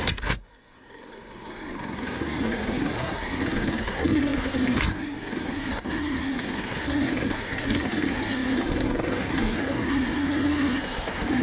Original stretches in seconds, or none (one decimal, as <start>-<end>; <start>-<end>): none

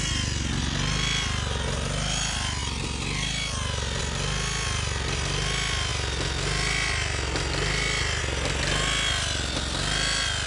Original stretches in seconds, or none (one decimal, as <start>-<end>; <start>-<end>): 0.0-10.5